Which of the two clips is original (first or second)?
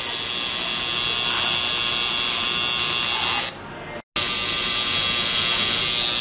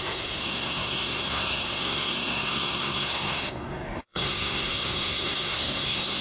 first